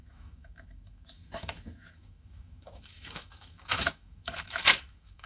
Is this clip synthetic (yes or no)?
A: yes